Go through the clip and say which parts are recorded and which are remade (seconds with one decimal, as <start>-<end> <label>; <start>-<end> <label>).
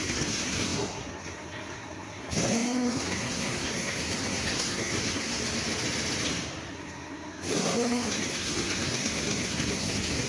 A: 0.0-5.4 remade; 5.4-6.7 recorded; 6.7-10.3 remade